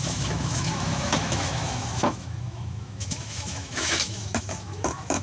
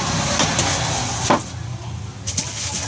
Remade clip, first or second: first